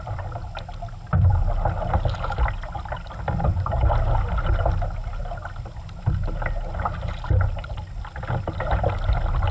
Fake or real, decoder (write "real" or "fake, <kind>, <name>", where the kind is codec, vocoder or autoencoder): real